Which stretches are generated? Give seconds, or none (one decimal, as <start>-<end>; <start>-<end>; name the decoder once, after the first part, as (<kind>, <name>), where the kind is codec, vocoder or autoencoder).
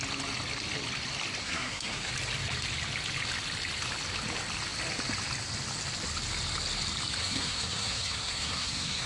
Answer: 1.4-2.1 (codec, SNAC); 7.2-9.1